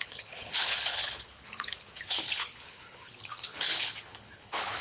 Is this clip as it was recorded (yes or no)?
no